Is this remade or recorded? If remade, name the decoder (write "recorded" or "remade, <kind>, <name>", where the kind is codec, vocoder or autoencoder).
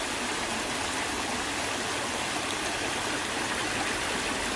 recorded